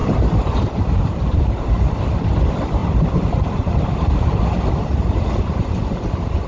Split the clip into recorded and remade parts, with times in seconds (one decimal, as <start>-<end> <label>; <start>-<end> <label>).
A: 0.0-1.7 remade; 1.7-6.5 recorded